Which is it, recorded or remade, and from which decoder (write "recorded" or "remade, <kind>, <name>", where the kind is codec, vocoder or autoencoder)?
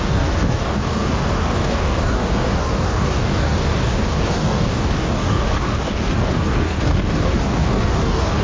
remade, codec, DAC